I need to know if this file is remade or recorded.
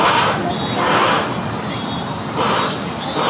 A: recorded